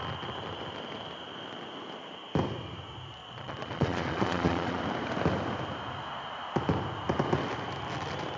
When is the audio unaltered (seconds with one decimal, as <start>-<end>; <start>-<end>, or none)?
0.0-3.2; 4.8-8.4